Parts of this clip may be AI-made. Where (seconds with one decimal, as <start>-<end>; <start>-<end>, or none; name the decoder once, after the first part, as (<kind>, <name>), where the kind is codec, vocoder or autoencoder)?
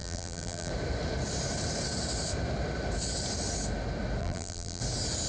0.0-0.7 (vocoder, BigVGAN v2); 4.2-4.8